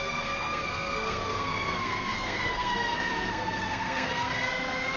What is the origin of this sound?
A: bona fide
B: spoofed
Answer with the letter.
B